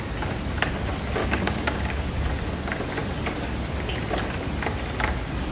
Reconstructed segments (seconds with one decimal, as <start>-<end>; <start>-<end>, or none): 1.2-2.1